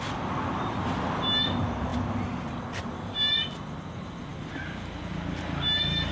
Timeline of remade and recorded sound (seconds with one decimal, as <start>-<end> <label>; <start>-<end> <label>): 0.0-6.1 recorded